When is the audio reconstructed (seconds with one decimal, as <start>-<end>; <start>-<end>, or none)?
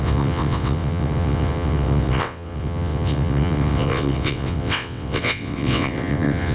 0.0-6.5